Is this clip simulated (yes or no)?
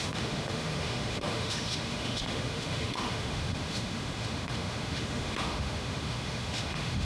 yes